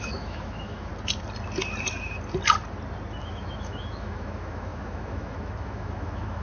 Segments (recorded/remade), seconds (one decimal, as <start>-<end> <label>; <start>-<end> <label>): 0.0-0.9 remade; 0.9-3.2 recorded; 3.2-6.4 remade